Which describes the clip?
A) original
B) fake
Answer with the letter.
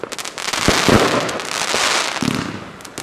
A